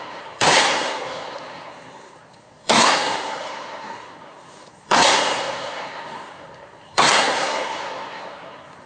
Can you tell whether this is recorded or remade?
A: remade